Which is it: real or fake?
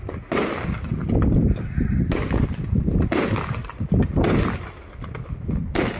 real